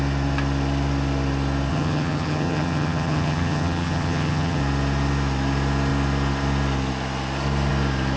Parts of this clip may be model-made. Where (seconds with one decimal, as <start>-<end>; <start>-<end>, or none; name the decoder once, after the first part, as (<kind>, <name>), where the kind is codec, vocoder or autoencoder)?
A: 1.7-4.6 (vocoder, HiFi-GAN)